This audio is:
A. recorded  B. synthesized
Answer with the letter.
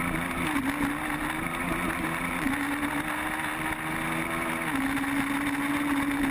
A